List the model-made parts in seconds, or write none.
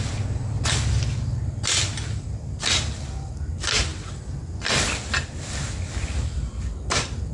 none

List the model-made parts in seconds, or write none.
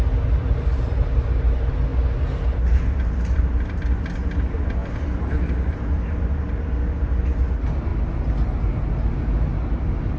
none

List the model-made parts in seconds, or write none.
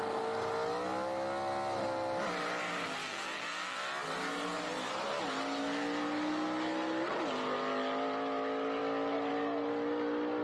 none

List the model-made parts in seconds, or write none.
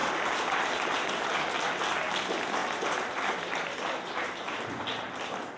none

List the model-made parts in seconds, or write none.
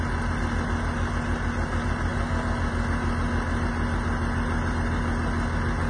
none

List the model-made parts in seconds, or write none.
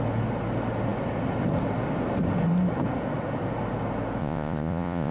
4.2-5.1 (vocoder, Vocos)